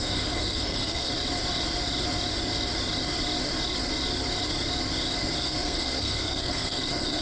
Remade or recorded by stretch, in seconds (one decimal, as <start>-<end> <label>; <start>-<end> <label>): 0.0-1.1 remade; 1.1-5.4 recorded; 5.4-7.2 remade